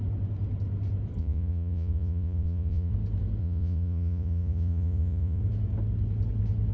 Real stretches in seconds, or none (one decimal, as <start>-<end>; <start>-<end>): 0.0-1.2; 2.9-3.4; 5.4-6.7